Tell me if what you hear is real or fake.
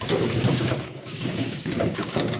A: fake